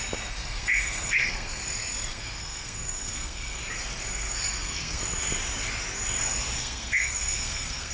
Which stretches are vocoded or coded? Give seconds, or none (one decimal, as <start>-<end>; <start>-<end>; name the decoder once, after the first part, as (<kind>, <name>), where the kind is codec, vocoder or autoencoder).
0.4-1.6 (codec, SNAC); 2.1-3.6; 4.1-5.0; 6.6-7.9